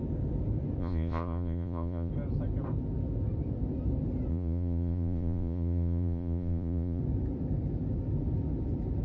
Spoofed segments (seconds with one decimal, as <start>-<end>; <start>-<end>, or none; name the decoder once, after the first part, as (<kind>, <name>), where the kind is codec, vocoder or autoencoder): 0.8-2.1 (vocoder, Vocos); 4.3-7.0